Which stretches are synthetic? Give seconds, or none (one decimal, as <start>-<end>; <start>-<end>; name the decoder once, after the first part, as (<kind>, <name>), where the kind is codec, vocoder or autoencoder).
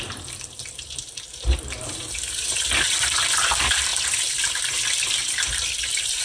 none